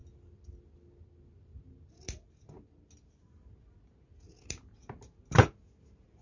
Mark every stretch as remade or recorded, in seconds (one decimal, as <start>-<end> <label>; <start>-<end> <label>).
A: 0.0-6.2 recorded